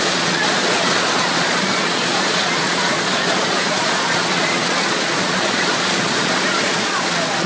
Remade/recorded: remade